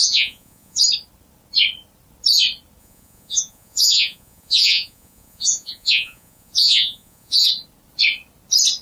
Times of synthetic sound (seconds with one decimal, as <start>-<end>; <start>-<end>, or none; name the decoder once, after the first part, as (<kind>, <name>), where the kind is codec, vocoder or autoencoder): 0.0-0.8 (vocoder, Vocos); 2.8-7.5